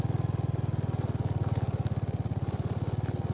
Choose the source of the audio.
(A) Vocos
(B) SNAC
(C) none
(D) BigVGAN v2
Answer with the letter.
C